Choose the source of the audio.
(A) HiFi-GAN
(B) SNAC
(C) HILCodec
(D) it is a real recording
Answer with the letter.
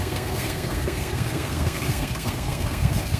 B